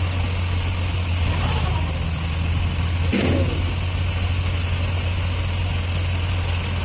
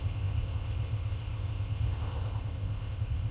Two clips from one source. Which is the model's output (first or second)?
second